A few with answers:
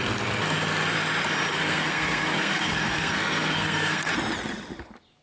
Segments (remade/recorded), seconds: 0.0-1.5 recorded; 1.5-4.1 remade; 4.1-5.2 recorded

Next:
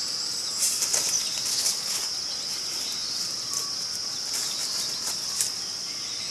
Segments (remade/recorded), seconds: 0.0-1.5 recorded; 1.5-2.0 remade; 2.0-6.3 recorded